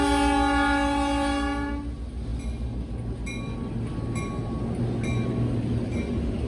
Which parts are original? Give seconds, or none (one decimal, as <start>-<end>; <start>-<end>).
0.0-6.5